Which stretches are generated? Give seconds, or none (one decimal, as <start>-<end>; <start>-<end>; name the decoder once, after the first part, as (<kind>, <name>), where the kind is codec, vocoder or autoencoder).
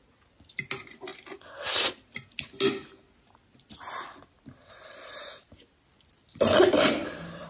1.1-1.8 (vocoder, BigVGAN v2)